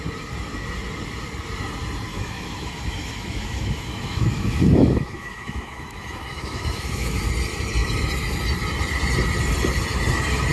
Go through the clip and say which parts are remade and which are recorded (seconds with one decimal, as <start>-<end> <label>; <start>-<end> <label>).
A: 0.0-2.1 recorded; 2.1-7.3 remade; 7.3-10.5 recorded